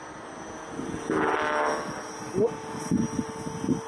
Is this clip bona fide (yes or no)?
yes